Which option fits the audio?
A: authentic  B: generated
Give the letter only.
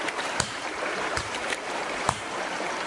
B